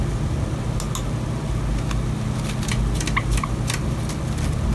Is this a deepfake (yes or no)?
no